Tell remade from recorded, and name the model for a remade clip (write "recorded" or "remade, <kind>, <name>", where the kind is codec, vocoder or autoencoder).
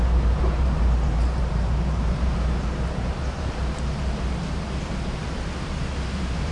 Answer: remade, vocoder, BigVGAN v2